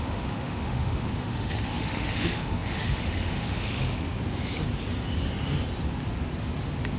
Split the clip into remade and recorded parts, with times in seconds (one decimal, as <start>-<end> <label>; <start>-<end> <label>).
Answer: 0.0-4.1 remade; 4.1-7.0 recorded